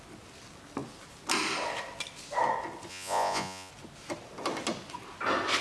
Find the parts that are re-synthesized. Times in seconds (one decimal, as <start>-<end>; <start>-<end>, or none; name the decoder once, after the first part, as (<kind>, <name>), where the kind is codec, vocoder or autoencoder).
2.9-3.7 (vocoder, Vocos)